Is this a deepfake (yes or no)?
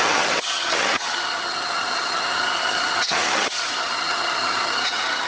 yes